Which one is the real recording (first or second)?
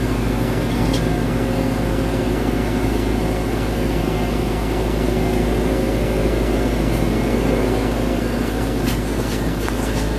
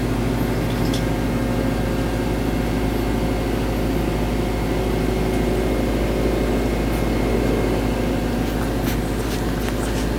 second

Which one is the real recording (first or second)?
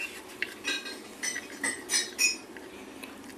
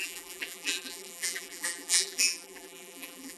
first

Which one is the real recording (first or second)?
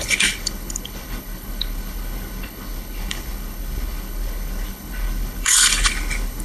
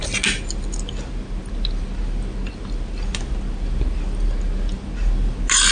second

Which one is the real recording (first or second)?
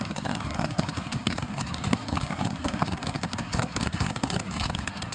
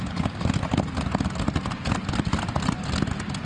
second